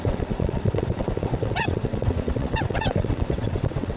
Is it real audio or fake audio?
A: fake